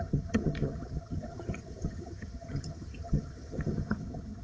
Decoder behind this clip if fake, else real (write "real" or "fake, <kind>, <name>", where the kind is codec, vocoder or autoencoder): fake, vocoder, HiFi-GAN